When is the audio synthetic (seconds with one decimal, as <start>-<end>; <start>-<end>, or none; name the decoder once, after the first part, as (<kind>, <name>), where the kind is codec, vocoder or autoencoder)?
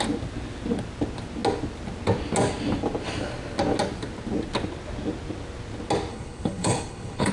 6.1-7.3 (codec, HILCodec)